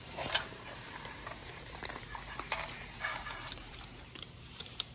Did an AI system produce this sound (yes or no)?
yes